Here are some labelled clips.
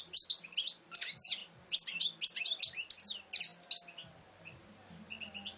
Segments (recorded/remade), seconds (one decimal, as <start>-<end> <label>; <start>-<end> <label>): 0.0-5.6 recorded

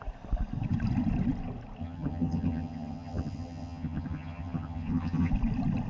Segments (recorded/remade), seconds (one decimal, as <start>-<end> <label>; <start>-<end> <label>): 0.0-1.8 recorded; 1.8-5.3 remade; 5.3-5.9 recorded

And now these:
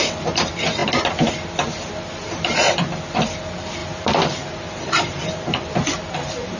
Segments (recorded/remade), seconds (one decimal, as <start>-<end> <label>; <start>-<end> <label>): 0.0-6.6 recorded

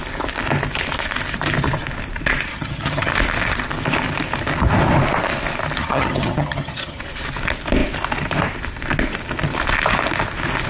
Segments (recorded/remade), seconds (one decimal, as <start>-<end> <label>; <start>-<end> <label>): 0.0-2.5 recorded; 2.5-3.1 remade; 3.1-5.8 recorded; 5.8-7.0 remade; 7.0-10.7 recorded

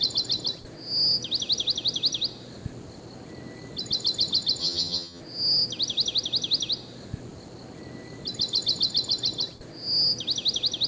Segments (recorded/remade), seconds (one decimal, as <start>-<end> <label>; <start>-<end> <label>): 0.0-4.6 recorded; 4.6-5.2 remade; 5.2-10.9 recorded

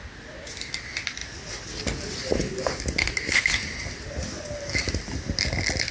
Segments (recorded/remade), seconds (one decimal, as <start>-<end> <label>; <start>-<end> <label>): 0.0-5.9 recorded